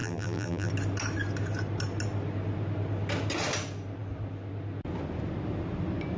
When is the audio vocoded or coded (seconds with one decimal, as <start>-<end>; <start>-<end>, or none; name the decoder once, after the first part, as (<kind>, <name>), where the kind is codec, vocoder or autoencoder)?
0.0-0.7 (vocoder, BigVGAN v2)